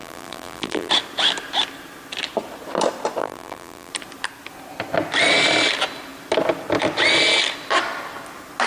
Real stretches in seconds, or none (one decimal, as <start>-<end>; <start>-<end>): 0.9-3.2; 3.9-8.7